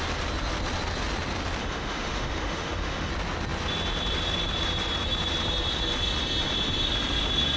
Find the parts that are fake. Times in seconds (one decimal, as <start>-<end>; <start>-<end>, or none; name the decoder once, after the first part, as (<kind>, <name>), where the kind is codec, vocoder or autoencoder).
1.6-3.1 (autoencoder, DAC-VAE)